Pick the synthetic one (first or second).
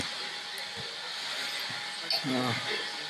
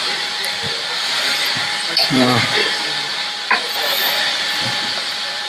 second